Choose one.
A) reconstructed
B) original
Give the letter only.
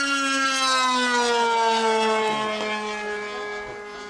B